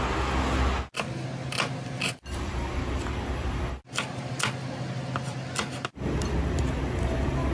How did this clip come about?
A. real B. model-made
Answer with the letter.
A